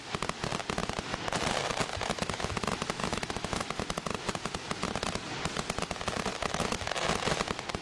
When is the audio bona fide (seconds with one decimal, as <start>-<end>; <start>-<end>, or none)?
0.0-1.9; 2.5-3.0; 3.6-6.3; 7.1-7.8